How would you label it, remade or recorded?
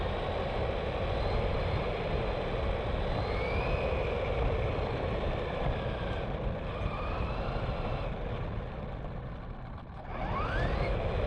recorded